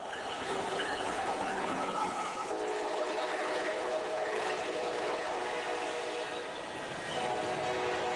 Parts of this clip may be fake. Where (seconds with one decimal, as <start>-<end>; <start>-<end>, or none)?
0.0-5.4